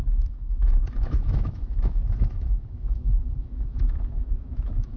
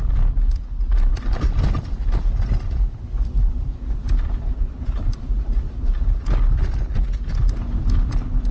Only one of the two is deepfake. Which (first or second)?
first